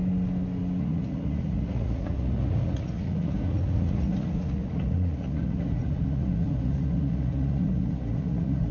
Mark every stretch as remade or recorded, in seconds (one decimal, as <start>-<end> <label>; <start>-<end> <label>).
0.0-0.8 recorded; 0.8-8.7 remade